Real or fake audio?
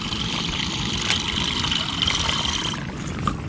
real